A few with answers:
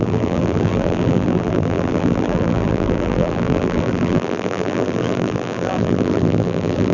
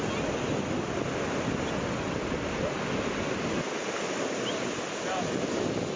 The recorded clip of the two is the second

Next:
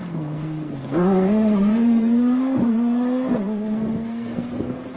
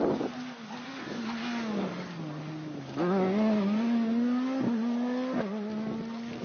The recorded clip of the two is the second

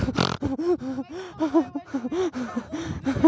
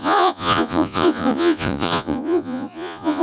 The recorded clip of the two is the first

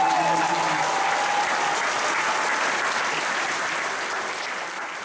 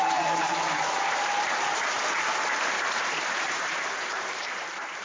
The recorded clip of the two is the first